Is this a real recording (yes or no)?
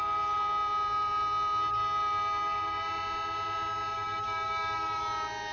yes